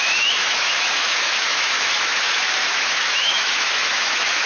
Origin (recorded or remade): remade